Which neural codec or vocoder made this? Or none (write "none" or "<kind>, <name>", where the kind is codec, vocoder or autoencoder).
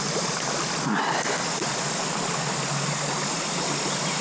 none